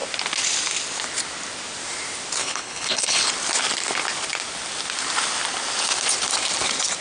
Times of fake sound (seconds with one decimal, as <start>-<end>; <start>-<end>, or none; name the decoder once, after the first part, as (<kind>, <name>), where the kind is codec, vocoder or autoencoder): 2.4-3.3 (codec, HILCodec)